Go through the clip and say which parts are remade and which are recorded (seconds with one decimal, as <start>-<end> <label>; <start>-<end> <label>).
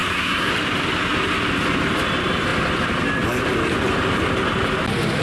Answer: 0.0-0.5 remade; 0.5-5.2 recorded